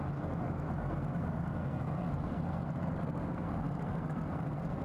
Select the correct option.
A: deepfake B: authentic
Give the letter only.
A